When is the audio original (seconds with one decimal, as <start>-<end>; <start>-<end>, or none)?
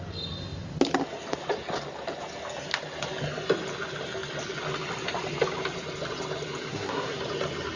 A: 0.0-6.7; 7.2-7.8